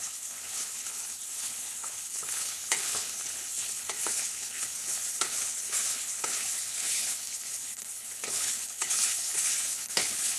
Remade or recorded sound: remade